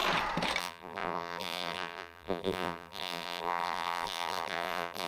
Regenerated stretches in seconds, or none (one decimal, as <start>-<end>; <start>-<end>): 0.6-5.1